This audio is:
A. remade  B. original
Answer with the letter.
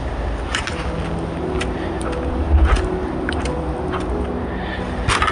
B